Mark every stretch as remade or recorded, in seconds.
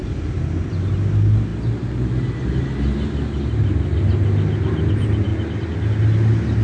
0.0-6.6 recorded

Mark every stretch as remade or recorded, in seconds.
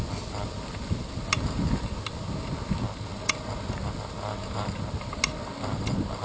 0.0-6.2 recorded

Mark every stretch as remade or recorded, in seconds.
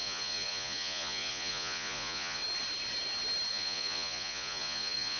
0.0-2.4 remade; 2.4-3.5 recorded; 3.5-5.2 remade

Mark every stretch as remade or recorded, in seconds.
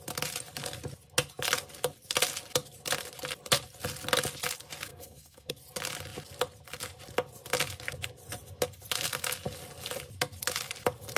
0.0-4.9 recorded; 4.9-5.5 remade; 5.5-11.2 recorded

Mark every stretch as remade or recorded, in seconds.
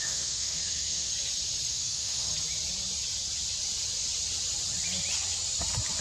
0.0-1.1 remade; 1.1-1.7 recorded; 1.7-2.3 remade; 2.3-6.0 recorded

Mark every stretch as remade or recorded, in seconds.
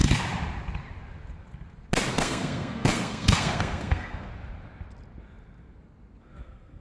0.0-2.1 recorded; 2.1-4.3 remade; 4.3-6.2 recorded; 6.2-6.8 remade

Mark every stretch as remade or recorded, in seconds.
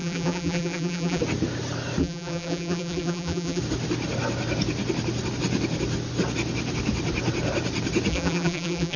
0.0-1.2 remade; 1.2-2.0 recorded; 2.0-3.6 remade; 3.6-8.1 recorded; 8.1-9.0 remade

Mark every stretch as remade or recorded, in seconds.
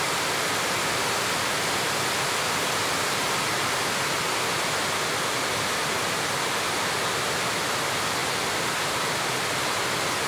0.0-10.3 recorded